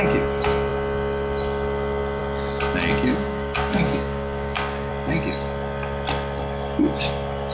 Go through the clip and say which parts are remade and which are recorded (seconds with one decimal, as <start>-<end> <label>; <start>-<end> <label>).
0.0-3.1 recorded; 3.1-4.9 remade; 4.9-7.5 recorded